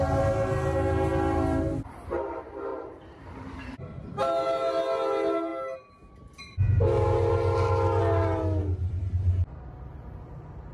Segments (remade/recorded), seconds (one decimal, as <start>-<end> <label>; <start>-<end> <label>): 0.0-2.7 recorded; 2.7-3.2 remade; 3.2-10.7 recorded